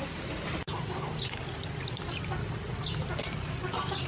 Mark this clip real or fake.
real